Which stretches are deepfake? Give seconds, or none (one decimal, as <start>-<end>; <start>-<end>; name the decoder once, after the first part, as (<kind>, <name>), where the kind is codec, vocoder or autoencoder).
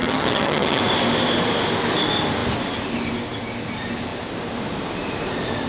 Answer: 0.0-0.8 (vocoder, HiFi-GAN)